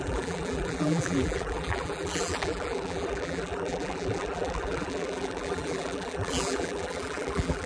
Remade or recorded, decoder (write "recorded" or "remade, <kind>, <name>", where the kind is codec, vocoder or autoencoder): remade, vocoder, BigVGAN v2